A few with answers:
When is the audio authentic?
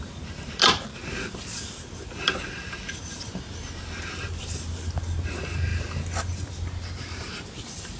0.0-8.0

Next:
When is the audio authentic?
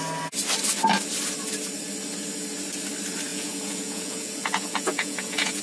0.0-3.3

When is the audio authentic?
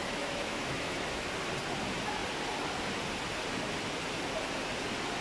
1.3-5.2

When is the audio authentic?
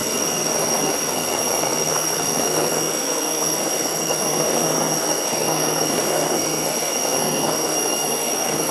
none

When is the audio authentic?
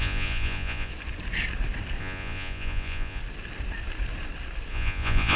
0.9-2.0; 3.2-4.7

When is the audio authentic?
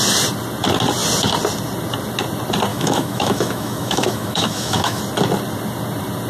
0.0-2.7; 5.0-6.3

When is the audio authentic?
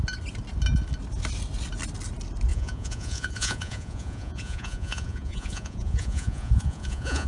0.0-2.5